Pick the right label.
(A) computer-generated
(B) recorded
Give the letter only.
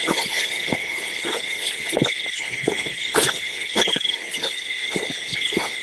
A